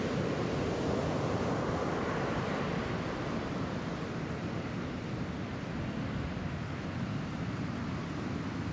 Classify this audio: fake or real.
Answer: real